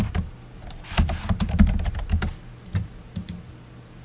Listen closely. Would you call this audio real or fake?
real